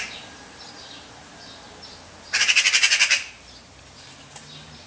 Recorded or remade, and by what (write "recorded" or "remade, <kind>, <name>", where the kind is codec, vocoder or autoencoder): recorded